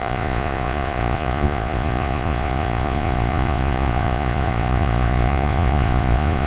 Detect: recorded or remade remade